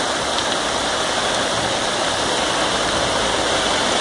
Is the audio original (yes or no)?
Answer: no